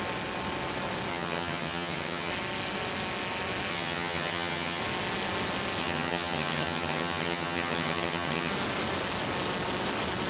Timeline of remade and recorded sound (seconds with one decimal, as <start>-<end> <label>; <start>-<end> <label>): 0.0-1.1 recorded; 1.1-2.3 remade; 2.3-3.7 recorded; 3.7-4.8 remade; 4.8-5.8 recorded; 5.8-8.5 remade; 8.5-10.3 recorded